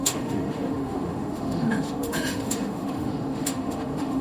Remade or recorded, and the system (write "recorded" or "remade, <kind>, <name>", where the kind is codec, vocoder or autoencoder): remade, autoencoder, DAC-VAE